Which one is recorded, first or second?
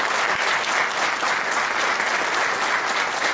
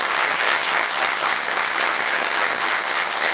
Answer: first